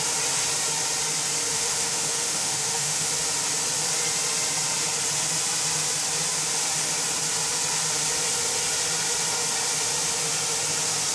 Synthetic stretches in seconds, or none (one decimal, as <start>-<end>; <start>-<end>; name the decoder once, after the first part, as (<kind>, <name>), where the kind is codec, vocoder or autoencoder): 1.5-3.1 (autoencoder, DAC-VAE)